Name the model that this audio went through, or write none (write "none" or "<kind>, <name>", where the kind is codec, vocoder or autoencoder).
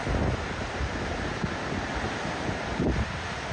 none